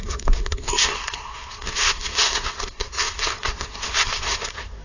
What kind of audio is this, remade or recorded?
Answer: remade